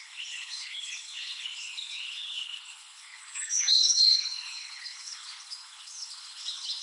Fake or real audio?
fake